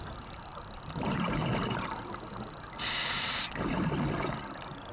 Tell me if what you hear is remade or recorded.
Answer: remade